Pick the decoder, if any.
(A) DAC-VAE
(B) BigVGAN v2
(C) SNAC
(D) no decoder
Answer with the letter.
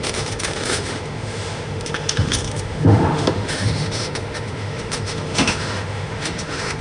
A